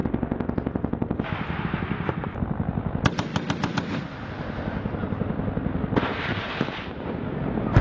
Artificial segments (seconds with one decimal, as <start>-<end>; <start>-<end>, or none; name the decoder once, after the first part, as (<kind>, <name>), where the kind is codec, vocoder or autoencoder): none